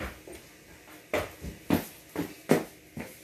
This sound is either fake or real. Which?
real